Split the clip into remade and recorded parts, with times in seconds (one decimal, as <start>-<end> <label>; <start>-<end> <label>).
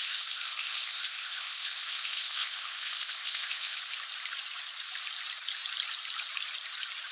0.0-3.8 remade; 3.8-7.1 recorded